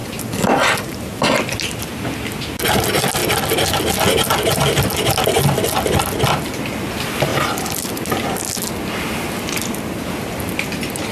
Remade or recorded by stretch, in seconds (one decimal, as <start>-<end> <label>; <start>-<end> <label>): 0.0-11.1 recorded